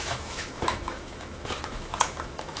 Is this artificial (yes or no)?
yes